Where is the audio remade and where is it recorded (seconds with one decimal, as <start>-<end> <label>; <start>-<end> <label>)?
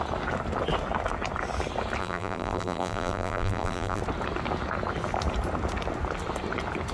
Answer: 0.0-2.0 recorded; 2.0-4.0 remade; 4.0-6.9 recorded